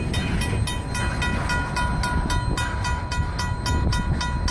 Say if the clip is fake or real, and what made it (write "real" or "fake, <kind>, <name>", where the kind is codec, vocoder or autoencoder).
real